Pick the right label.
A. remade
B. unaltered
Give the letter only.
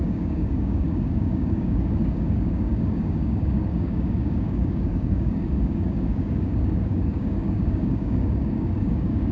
A